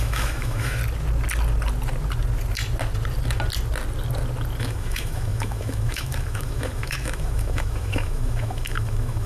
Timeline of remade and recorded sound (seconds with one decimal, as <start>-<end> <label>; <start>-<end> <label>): 0.0-0.8 remade; 0.8-4.6 recorded; 4.6-9.3 remade